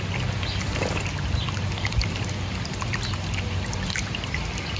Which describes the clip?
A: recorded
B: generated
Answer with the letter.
A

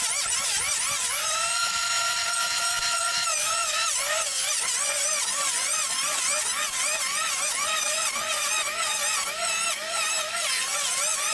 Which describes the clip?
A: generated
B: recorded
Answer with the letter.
A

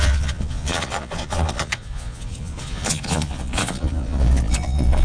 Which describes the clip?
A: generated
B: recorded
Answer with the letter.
A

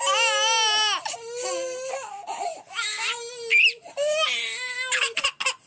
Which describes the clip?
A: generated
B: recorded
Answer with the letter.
B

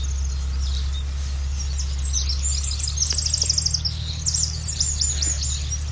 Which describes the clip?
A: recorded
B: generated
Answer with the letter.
A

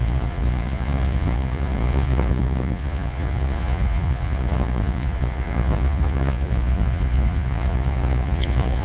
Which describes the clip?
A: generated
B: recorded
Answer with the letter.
A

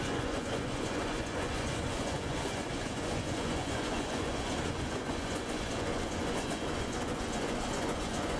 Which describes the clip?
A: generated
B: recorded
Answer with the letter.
A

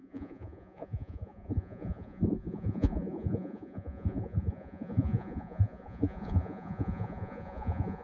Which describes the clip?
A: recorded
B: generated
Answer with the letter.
B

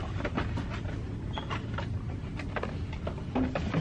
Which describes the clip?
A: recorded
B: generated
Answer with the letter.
A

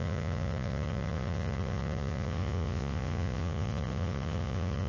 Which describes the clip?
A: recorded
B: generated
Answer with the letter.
B